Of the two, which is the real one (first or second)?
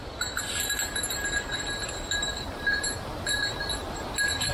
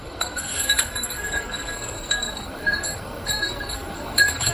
first